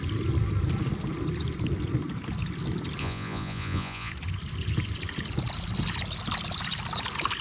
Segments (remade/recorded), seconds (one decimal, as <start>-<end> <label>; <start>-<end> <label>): 0.0-3.0 recorded; 3.0-4.1 remade; 4.1-7.4 recorded

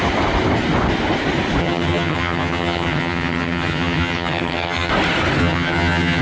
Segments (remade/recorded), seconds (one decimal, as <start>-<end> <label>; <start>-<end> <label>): 0.0-1.6 recorded; 1.6-4.9 remade; 4.9-5.4 recorded; 5.4-6.2 remade